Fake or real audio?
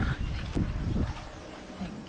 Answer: real